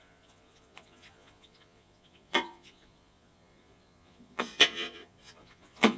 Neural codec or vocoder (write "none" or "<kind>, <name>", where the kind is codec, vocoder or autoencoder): vocoder, Vocos